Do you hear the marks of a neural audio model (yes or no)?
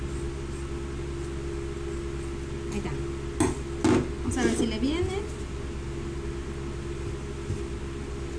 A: no